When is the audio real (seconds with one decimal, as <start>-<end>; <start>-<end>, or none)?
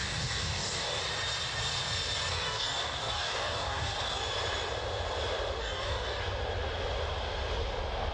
1.0-2.3; 4.2-5.6; 6.2-8.1